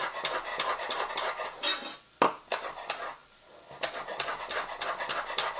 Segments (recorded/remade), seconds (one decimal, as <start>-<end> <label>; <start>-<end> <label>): 0.0-0.5 recorded; 0.5-1.1 remade; 1.1-5.6 recorded

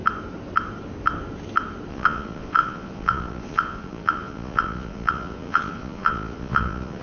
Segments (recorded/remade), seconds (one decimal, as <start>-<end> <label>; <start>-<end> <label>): 0.0-1.9 recorded; 1.9-7.0 remade

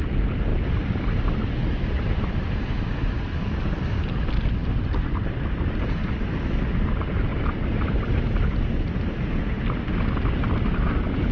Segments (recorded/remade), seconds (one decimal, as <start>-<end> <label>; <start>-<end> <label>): 0.0-4.6 recorded; 4.6-5.5 remade; 5.5-11.3 recorded